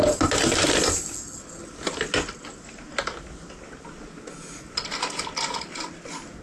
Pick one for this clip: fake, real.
real